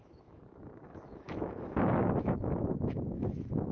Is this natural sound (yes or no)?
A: no